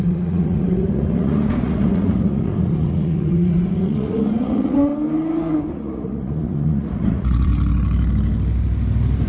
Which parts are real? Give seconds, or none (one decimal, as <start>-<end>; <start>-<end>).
4.9-5.7; 7.5-9.3